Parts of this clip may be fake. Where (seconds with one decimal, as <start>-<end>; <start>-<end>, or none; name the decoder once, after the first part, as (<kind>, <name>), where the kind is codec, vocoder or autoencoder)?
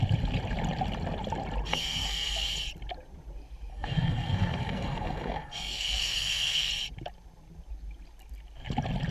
1.7-2.5 (codec, SNAC); 3.7-6.7